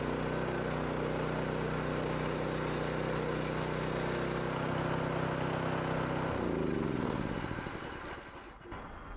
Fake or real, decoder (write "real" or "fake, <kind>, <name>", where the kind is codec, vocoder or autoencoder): real